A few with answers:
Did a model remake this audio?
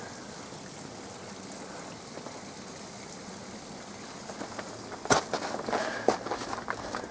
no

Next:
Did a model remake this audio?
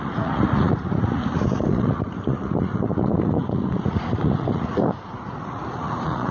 yes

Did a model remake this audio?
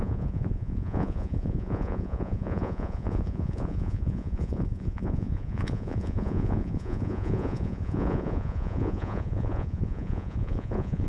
yes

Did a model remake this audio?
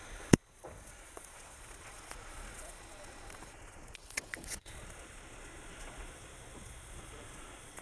yes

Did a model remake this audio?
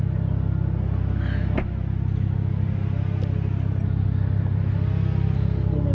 no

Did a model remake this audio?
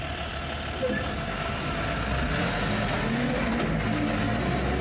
no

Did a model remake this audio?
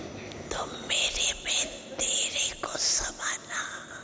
no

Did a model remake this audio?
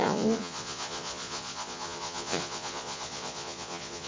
yes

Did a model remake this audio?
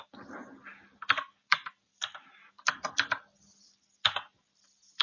no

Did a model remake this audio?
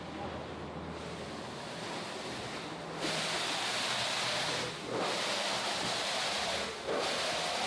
no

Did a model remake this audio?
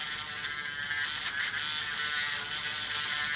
no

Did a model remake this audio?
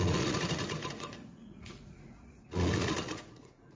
yes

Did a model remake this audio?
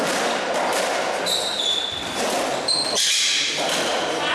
no